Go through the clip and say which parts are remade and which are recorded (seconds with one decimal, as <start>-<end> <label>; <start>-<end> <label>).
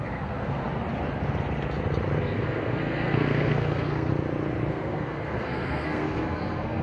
0.0-0.6 remade; 0.6-2.2 recorded; 2.2-4.1 remade; 4.1-4.7 recorded; 4.7-6.8 remade